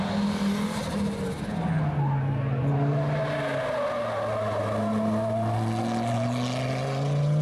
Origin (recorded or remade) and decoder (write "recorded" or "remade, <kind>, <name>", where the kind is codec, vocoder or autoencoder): recorded